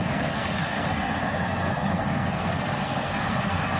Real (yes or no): no